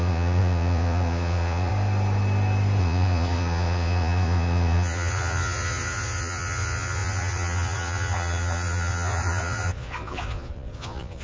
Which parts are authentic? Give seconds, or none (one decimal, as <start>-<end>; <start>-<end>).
1.7-2.8